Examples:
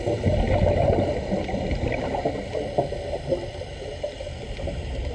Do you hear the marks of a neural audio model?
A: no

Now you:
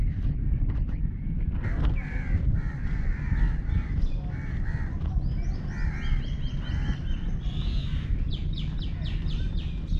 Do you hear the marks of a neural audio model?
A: no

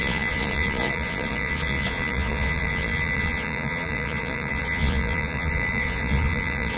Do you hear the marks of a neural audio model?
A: yes